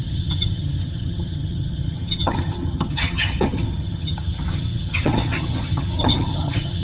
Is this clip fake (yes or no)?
yes